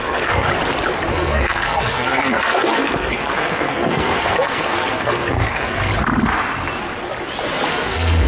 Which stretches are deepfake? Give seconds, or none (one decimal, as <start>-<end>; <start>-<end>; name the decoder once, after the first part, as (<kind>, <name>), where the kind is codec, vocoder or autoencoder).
0.0-0.5 (codec, SNAC); 1.1-5.9; 7.7-8.3